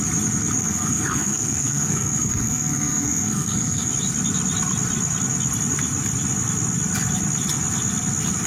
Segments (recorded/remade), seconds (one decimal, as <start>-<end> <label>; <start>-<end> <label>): 0.0-0.6 recorded; 0.6-3.9 remade; 3.9-8.5 recorded